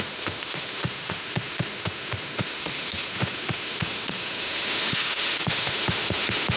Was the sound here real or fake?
fake